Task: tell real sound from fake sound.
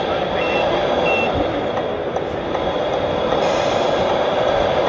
real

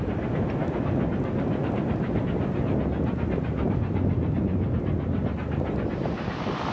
real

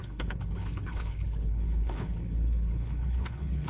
fake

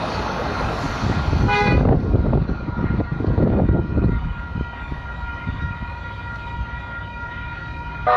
fake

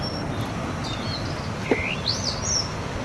real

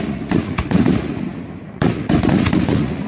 fake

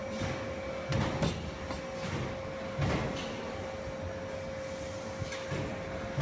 real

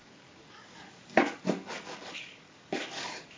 fake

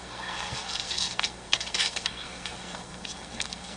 fake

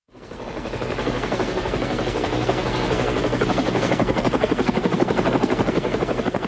fake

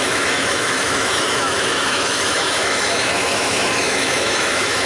fake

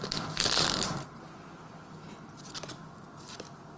real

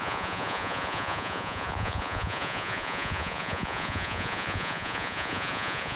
fake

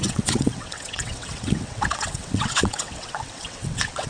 fake